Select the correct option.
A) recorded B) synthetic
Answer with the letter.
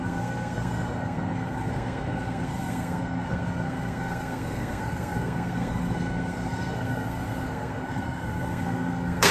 B